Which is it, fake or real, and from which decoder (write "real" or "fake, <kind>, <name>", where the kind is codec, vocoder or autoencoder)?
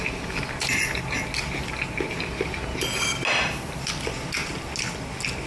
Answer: real